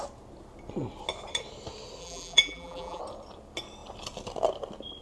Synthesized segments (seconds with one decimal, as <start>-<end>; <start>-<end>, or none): 2.0-3.0